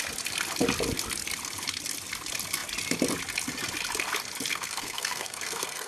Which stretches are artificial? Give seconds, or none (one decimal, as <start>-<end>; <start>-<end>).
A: 4.5-5.9